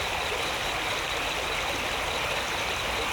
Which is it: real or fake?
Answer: real